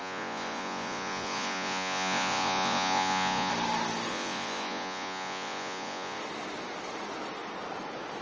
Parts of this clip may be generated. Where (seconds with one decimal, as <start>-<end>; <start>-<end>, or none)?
0.0-3.5; 4.1-6.2